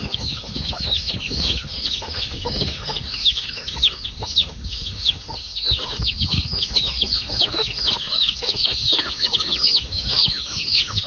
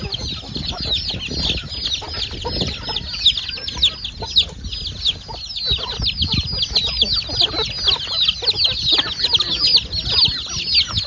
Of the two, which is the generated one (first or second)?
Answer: first